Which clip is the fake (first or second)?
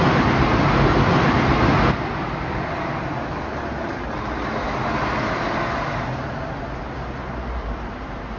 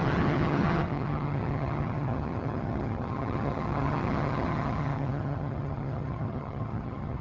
second